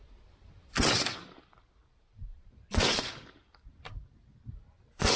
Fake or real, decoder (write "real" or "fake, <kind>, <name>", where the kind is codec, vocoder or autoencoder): real